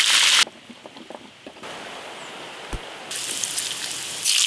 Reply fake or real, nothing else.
real